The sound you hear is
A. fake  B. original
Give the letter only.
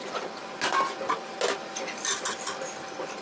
B